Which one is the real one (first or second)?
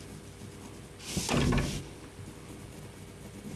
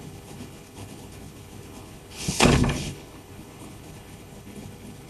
first